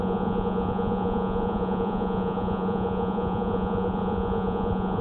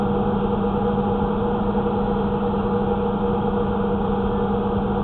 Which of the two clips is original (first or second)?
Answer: second